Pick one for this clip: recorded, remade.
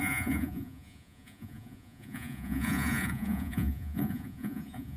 remade